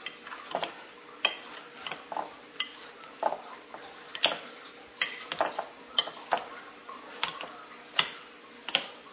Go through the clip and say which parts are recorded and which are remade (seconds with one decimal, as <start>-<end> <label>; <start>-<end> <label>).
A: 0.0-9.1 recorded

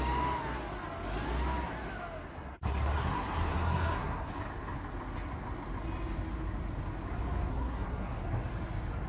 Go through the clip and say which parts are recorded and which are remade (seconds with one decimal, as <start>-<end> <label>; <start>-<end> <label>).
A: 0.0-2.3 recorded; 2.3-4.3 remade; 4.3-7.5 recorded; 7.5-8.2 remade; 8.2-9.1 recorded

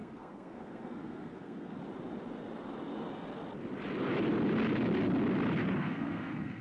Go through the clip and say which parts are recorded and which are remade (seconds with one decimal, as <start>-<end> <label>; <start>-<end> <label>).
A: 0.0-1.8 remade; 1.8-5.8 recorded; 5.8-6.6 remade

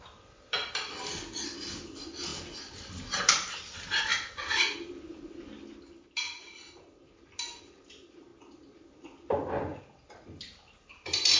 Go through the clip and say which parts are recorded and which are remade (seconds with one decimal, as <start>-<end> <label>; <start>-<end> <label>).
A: 0.0-11.4 recorded